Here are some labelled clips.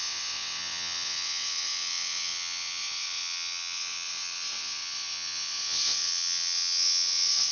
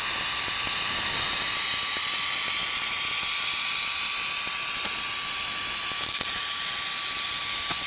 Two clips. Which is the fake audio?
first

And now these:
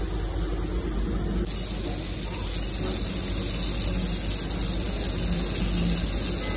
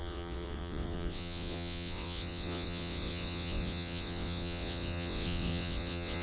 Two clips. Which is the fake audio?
second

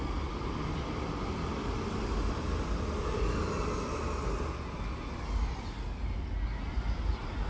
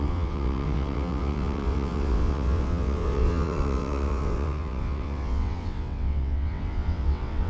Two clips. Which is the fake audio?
second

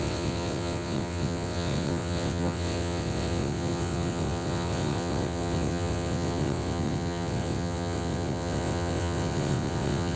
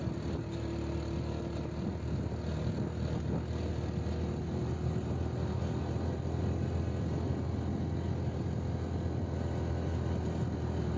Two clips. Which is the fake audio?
first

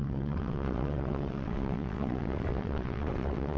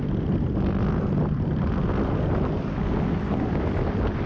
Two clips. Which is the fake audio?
first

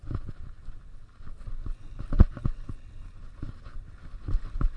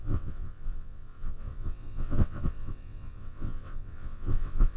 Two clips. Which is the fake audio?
second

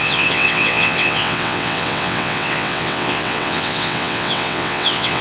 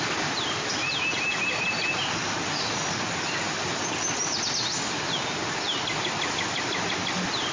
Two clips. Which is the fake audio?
first